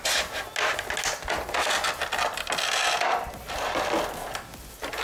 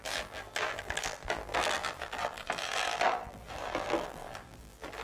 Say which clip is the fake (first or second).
second